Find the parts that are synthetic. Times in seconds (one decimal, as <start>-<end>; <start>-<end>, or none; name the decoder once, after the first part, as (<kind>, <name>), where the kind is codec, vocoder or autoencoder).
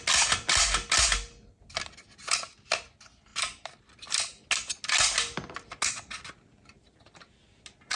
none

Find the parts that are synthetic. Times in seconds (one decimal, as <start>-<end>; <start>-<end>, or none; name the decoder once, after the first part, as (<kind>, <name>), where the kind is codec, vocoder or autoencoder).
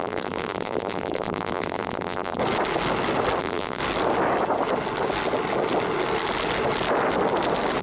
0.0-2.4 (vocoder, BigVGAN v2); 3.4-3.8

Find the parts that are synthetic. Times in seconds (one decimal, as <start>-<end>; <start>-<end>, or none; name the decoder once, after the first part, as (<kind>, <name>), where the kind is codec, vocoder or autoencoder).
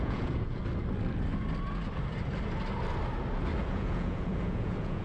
0.0-0.6 (vocoder, Vocos); 3.6-5.0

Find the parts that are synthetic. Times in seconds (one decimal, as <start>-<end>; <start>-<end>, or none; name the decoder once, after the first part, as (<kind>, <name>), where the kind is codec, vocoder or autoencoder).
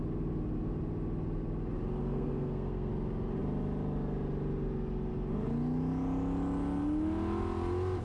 2.0-2.9 (codec, SNAC)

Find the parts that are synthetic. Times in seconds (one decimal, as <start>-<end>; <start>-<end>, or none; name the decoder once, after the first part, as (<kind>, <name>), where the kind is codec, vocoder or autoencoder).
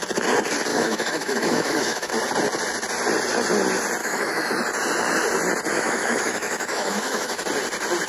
0.7-2.1 (autoencoder, DAC-VAE); 4.0-4.5; 5.7-7.4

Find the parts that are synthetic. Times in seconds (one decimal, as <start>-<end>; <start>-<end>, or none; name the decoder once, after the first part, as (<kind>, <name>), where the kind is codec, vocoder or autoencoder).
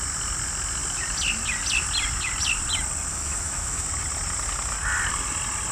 3.1-3.9 (autoencoder, DAC-VAE)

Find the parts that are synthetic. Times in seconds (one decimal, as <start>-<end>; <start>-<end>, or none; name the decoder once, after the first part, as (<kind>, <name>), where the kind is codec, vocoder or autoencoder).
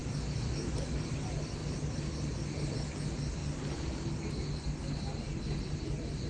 0.0-1.0 (autoencoder, DAC-VAE)